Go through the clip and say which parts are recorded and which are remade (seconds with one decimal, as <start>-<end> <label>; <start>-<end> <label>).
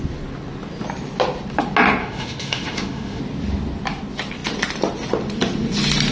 0.0-2.0 recorded; 2.0-3.2 remade; 3.2-6.1 recorded